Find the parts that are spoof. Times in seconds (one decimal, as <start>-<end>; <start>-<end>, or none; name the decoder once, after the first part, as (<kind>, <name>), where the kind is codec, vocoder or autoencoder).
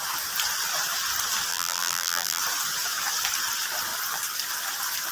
1.5-2.4 (vocoder, BigVGAN v2)